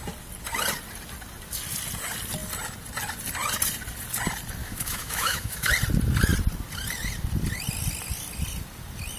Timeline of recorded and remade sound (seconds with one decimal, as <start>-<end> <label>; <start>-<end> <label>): 0.0-4.6 recorded; 4.6-5.7 remade; 5.7-9.2 recorded